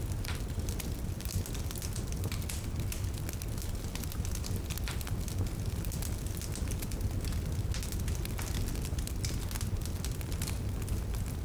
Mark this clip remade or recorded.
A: recorded